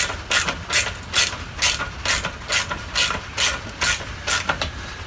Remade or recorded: recorded